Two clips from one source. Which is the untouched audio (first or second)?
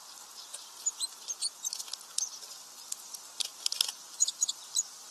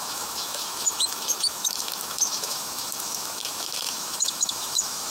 first